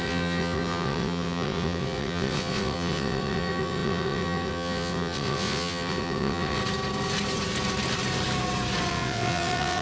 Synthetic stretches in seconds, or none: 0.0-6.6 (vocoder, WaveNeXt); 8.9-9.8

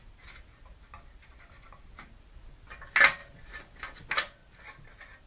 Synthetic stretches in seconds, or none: none

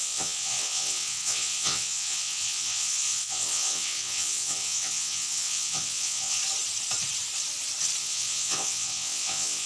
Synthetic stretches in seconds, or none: 0.0-6.4 (vocoder, WaveNeXt); 8.0-9.7

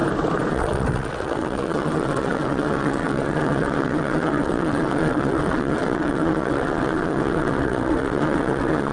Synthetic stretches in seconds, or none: 0.5-8.9 (vocoder, WaveNeXt)

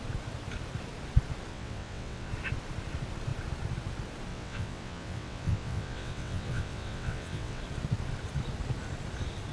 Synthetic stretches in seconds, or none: 1.5-2.3 (vocoder, WaveNeXt); 4.3-7.6